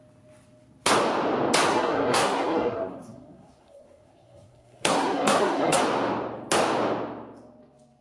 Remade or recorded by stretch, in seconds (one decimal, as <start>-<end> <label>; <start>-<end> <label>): 0.0-1.7 recorded; 1.7-5.8 remade; 5.8-8.0 recorded